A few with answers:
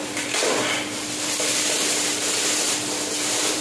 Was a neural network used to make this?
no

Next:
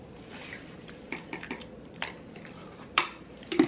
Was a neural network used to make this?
yes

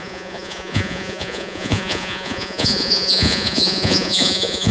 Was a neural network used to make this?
yes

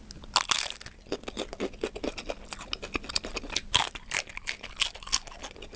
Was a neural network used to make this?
no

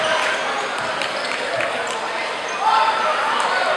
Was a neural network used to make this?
yes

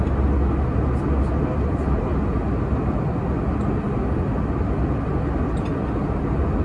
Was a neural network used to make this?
no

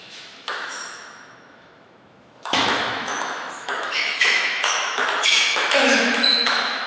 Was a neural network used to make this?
yes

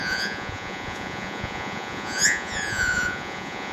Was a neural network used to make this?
yes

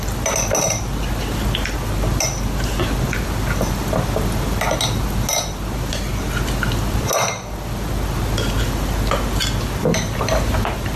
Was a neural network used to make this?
no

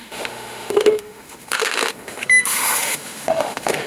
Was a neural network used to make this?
yes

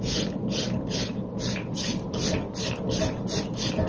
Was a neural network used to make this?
no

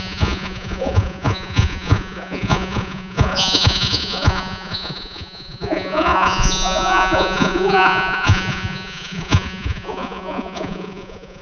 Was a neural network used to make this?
yes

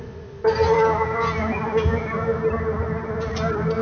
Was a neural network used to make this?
no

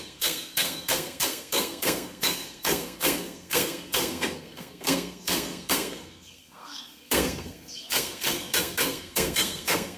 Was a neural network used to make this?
yes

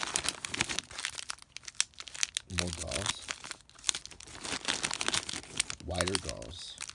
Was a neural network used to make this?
no